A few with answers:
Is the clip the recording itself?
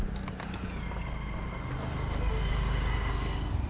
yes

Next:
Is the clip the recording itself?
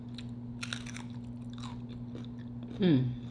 yes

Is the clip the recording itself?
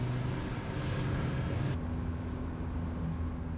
yes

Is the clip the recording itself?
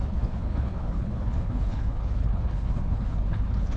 no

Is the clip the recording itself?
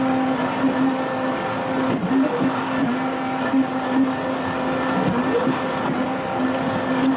yes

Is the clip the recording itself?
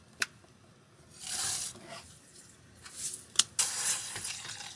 yes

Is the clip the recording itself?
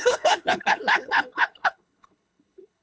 no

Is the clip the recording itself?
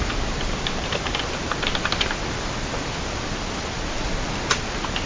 yes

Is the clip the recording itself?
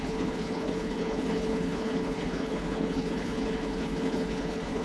no